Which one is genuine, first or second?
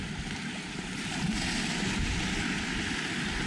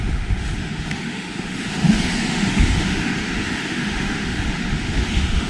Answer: first